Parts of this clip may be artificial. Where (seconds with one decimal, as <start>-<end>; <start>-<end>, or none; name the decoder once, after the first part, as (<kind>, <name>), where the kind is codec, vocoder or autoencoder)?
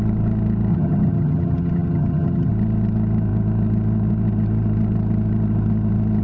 0.7-2.5 (vocoder, HiFi-GAN)